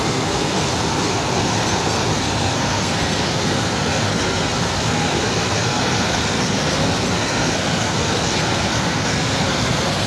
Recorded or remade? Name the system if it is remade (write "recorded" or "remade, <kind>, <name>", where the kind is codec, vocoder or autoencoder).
remade, codec, SNAC